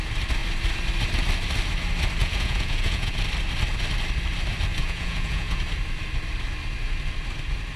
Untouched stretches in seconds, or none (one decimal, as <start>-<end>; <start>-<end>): 0.0-2.2; 3.1-4.8; 5.6-7.8